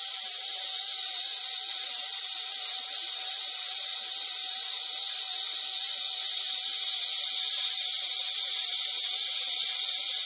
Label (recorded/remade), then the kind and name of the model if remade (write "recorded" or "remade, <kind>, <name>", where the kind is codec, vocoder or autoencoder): recorded